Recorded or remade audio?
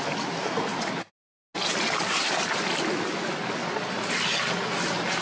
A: recorded